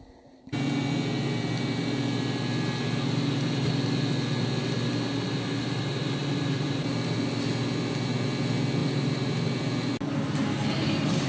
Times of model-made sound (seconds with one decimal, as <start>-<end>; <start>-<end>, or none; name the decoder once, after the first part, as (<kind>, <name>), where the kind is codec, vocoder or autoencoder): 6.2-7.5 (vocoder, BigVGAN v2); 8.8-9.6

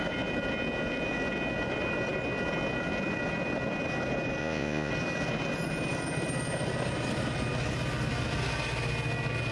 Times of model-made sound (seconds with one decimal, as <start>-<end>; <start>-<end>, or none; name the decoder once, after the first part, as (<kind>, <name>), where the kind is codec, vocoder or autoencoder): 4.4-4.9 (vocoder, Vocos)

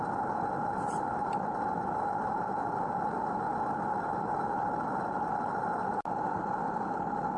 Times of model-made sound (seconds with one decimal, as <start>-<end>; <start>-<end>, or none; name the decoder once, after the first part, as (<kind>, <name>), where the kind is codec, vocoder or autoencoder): none

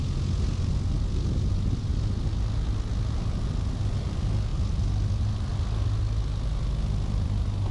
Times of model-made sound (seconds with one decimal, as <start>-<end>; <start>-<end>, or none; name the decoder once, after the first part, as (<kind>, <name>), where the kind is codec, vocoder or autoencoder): none

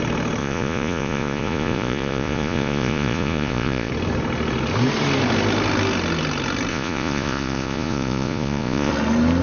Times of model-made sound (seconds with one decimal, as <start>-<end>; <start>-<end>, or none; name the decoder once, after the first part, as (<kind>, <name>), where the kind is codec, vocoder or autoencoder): 0.4-3.9 (vocoder, Vocos); 6.7-8.9

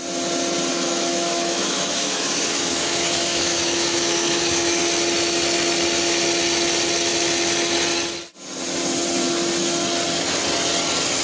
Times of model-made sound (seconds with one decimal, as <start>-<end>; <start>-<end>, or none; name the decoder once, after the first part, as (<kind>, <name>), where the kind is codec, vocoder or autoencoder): 0.7-4.8 (autoencoder, DAC-VAE)